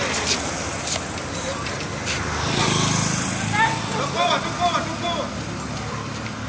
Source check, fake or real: real